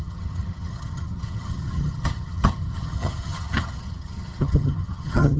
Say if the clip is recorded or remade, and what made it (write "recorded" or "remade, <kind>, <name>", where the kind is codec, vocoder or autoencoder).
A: remade, vocoder, HiFi-GAN